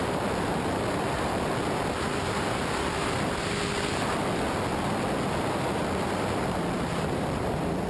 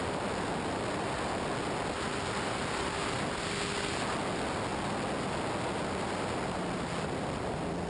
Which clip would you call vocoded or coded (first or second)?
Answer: first